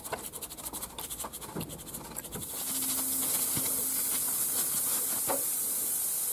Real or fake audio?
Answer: real